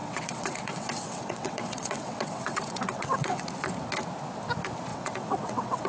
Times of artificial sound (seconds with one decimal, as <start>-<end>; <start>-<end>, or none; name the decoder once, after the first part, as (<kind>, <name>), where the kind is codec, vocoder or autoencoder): 0.0-3.5 (vocoder, WaveNeXt); 4.9-5.9